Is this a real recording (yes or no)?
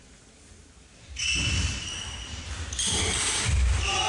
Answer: yes